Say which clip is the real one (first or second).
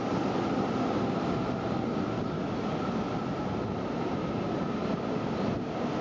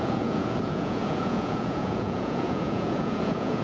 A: first